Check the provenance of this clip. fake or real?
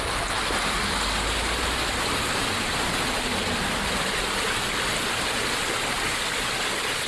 real